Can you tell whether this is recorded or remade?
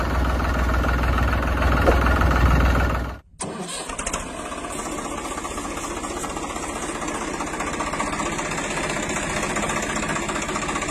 recorded